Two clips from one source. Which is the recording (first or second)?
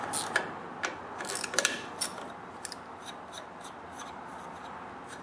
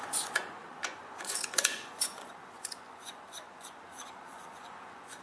first